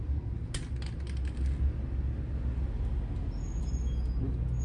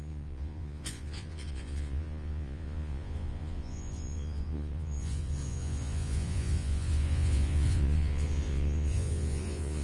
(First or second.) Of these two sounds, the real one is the first